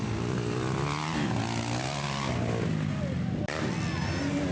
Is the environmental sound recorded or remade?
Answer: recorded